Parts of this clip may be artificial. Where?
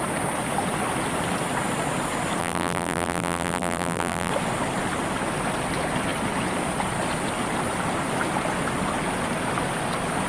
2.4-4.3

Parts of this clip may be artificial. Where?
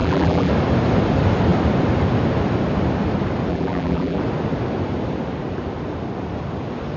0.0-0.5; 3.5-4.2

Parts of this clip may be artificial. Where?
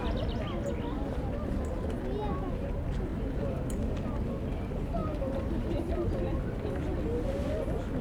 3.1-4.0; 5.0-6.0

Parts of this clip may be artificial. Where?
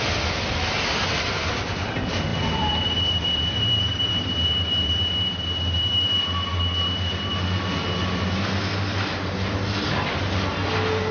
2.3-5.1; 6.5-7.1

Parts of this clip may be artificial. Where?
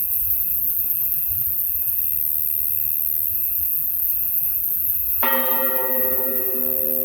0.0-2.0; 3.3-6.6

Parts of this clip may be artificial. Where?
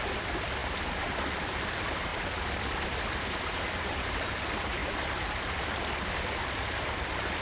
0.0-2.1; 3.2-7.4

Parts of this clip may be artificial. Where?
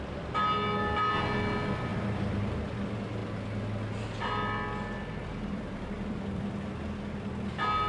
1.9-2.7; 5.2-6.4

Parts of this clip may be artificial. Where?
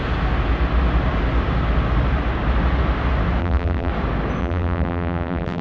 3.4-3.9; 4.4-5.6